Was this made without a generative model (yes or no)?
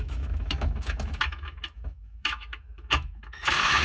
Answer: no